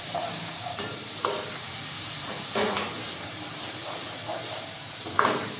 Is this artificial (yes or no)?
yes